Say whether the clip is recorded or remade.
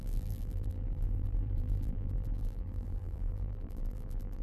remade